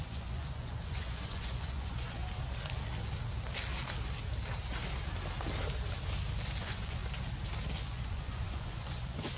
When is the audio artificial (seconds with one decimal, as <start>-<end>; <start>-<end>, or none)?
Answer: 0.0-2.2; 6.6-7.0; 7.8-9.4